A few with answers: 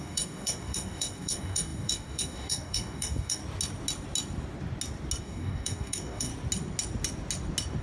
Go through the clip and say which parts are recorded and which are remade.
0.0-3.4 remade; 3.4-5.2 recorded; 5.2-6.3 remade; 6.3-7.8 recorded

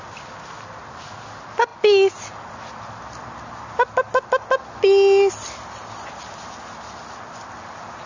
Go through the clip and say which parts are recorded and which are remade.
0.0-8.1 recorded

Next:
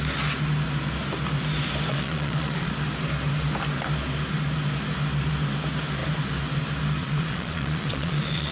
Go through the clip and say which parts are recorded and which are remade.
0.0-1.9 recorded; 1.9-2.7 remade; 2.7-7.0 recorded; 7.0-8.5 remade

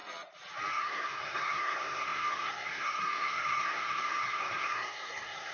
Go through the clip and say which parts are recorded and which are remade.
0.0-0.7 recorded; 0.7-5.5 remade